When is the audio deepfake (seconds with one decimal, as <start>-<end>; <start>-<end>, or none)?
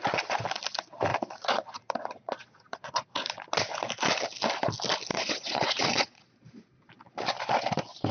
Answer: 1.1-3.1; 5.1-6.9